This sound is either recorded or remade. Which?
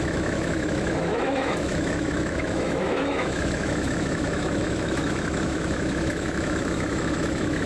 remade